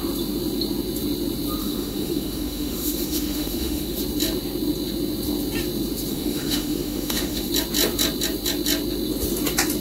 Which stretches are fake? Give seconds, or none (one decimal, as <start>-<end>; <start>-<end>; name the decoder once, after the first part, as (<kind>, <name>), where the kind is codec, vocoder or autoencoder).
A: 1.6-4.0 (autoencoder, DAC-VAE); 6.1-7.5